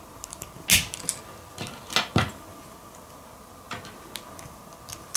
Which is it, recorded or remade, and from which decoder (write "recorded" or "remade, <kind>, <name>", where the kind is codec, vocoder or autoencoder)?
recorded